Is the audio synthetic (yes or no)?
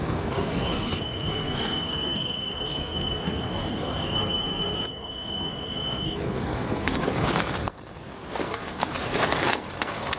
yes